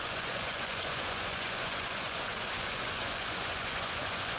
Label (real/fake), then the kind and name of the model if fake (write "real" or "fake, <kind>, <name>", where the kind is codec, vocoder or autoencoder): fake, vocoder, Vocos